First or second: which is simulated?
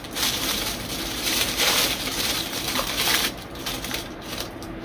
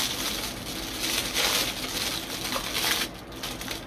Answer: first